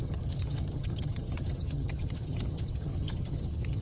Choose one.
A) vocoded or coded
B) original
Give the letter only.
A